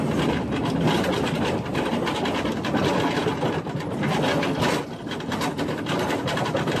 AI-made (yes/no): no